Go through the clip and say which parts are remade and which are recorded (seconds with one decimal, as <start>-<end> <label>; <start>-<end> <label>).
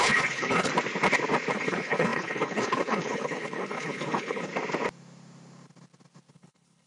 0.0-0.7 remade; 0.7-1.5 recorded; 1.5-4.5 remade; 4.5-6.3 recorded; 6.3-6.9 remade